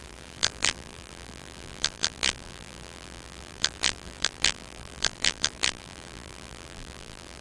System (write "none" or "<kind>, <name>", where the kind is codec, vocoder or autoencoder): vocoder, BigVGAN v2